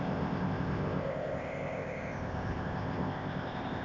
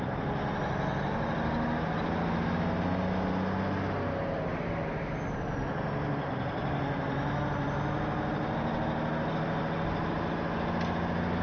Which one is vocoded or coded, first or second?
first